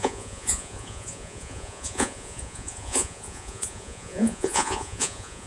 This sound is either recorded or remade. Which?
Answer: remade